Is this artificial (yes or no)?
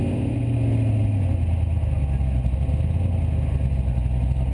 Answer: no